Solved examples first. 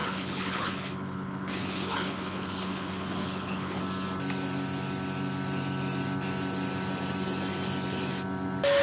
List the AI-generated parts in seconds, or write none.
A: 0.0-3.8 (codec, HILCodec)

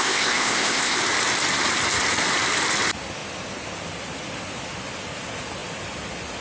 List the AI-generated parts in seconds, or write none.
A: 0.0-1.0 (codec, ZipCodec)

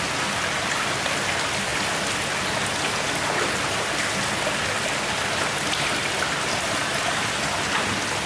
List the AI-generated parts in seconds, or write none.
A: none

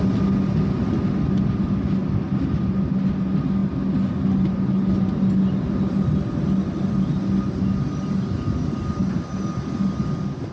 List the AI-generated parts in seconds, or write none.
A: none